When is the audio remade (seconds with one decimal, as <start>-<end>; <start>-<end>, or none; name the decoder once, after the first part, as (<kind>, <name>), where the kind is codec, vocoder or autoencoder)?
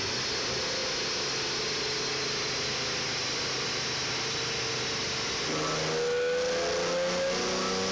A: none